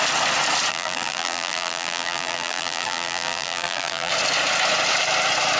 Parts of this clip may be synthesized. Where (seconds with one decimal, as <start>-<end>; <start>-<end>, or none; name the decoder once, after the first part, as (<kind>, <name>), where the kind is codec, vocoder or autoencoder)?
0.7-4.1 (vocoder, BigVGAN v2)